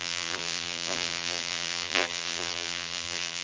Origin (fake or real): fake